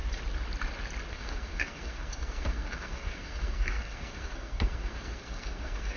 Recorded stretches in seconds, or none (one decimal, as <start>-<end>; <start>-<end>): 0.0-1.1